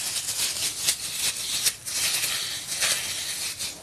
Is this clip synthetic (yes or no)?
no